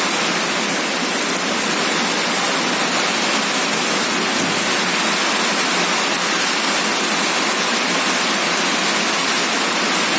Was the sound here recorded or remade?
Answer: recorded